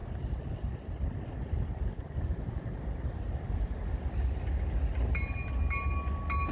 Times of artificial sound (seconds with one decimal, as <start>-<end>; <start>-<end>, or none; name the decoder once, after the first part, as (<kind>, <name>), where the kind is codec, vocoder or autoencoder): none